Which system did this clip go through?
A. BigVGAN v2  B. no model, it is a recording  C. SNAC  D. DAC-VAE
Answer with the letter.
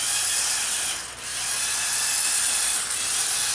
B